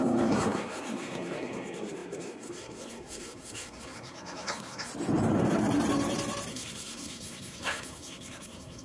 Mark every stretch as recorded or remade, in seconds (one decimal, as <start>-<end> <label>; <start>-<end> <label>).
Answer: 0.0-4.9 remade; 4.9-6.5 recorded; 6.5-8.8 remade